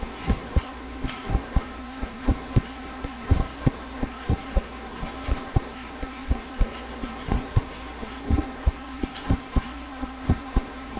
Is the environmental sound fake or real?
fake